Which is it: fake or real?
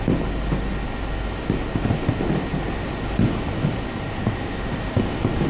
real